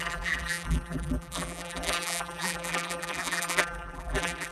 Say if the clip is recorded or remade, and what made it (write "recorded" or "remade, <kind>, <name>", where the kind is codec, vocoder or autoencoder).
remade, vocoder, BigVGAN v2